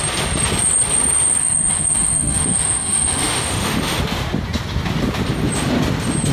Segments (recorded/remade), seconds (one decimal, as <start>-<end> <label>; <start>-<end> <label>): 0.0-1.4 recorded; 1.4-4.0 remade; 4.0-6.3 recorded